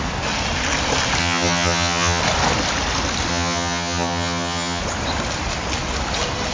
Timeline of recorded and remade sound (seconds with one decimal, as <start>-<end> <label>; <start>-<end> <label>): 0.0-1.2 recorded; 1.2-2.2 remade; 2.2-3.3 recorded; 3.3-4.8 remade; 4.8-6.5 recorded